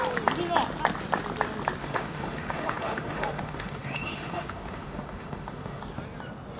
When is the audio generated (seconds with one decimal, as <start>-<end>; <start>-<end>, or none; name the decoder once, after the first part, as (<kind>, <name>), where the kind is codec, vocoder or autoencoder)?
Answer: 1.8-5.8 (autoencoder, DAC-VAE)